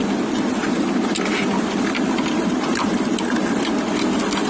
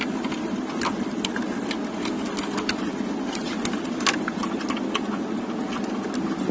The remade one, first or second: first